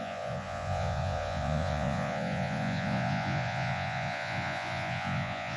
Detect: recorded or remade remade